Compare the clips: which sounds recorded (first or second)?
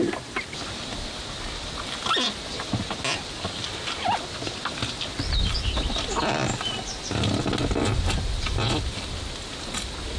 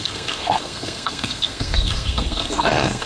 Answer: first